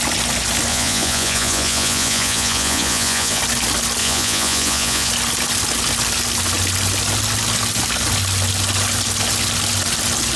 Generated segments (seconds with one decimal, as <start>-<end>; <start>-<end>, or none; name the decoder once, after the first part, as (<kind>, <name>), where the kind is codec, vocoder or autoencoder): 0.7-3.4 (vocoder, Vocos); 4.0-5.1